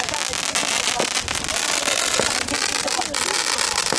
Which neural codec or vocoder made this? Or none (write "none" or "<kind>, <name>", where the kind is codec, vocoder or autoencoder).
none